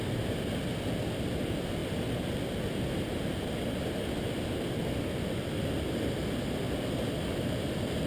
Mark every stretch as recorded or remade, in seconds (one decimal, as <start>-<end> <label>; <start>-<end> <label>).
0.0-8.1 recorded